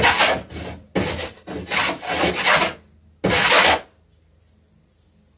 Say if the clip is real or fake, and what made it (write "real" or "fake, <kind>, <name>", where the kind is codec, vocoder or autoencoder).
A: real